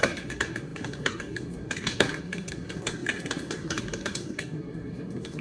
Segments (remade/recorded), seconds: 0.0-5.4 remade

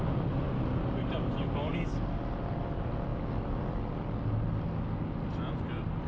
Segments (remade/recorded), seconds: 0.0-6.1 recorded

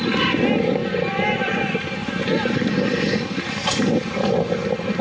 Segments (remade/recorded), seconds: 0.0-5.0 recorded

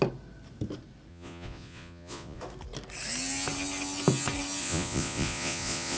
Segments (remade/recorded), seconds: 0.0-1.1 recorded; 1.1-2.4 remade; 2.4-4.6 recorded; 4.6-6.0 remade

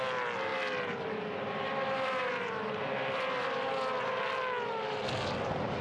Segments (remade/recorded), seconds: 0.0-5.8 recorded

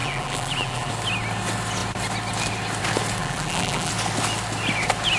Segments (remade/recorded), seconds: 0.0-0.9 remade; 0.9-3.2 recorded; 3.2-3.9 remade; 3.9-5.2 recorded